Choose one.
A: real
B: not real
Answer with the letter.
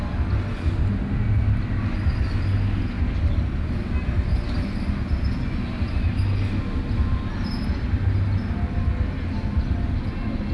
A